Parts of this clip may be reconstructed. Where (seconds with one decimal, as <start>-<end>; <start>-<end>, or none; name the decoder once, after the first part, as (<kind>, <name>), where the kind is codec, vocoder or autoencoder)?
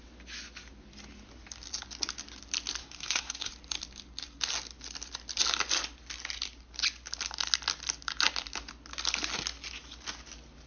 2.8-3.5 (codec, SNAC)